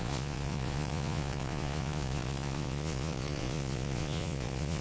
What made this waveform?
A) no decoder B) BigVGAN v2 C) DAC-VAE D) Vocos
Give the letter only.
D